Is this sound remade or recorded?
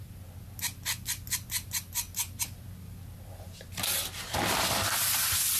recorded